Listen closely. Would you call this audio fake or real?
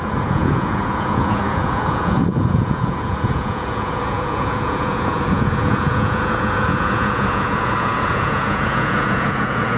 fake